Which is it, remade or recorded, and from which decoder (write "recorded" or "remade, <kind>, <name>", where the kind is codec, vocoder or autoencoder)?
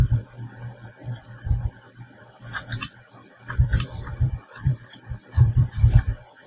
remade, vocoder, BigVGAN v2